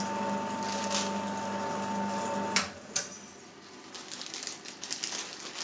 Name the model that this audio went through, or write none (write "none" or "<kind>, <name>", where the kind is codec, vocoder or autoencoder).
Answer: none